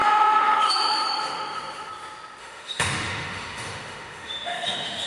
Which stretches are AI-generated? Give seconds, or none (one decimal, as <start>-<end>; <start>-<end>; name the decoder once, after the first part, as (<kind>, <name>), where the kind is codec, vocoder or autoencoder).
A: 0.0-1.9 (autoencoder, DAC-VAE); 2.4-5.1